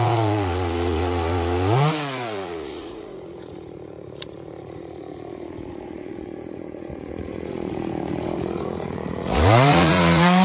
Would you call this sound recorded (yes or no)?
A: no